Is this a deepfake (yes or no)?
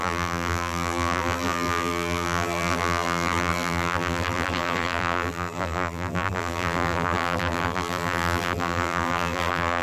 yes